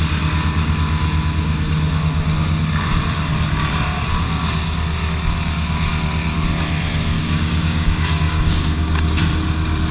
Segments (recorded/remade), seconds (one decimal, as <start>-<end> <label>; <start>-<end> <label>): 0.0-7.2 recorded; 7.2-9.2 remade; 9.2-9.9 recorded